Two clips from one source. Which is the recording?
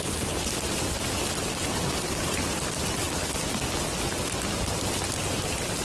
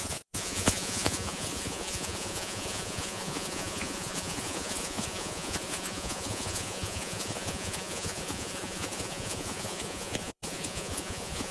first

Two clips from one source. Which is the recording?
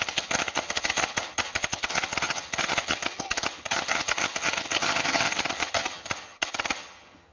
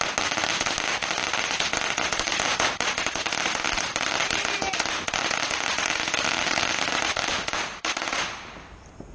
second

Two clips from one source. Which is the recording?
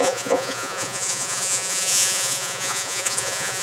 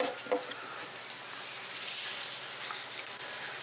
second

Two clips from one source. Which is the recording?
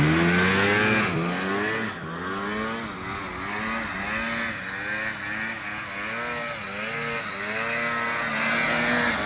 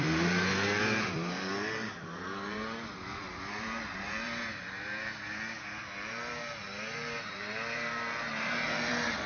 first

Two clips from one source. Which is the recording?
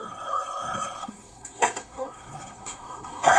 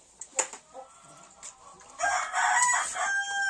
second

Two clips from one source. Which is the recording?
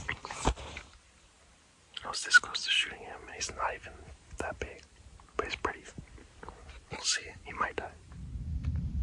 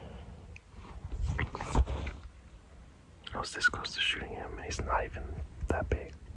second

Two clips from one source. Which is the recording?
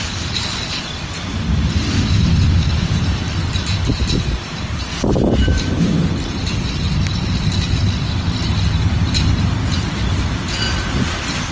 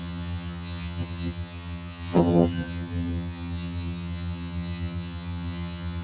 first